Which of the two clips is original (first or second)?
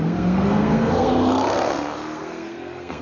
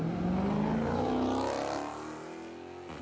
second